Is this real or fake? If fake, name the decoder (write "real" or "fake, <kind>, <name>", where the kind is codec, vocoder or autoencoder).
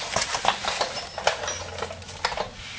real